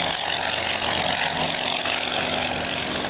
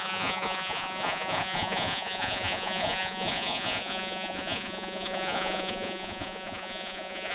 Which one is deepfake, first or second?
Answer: second